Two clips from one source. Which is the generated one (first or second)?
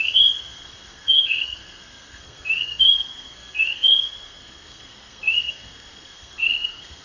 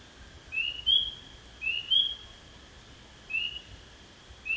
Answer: first